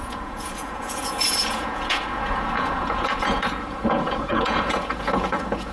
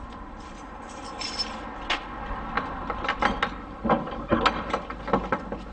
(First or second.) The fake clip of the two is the first